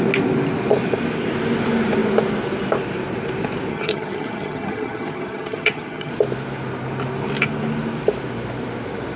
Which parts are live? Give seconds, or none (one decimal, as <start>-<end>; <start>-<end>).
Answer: 0.0-3.7; 6.1-9.2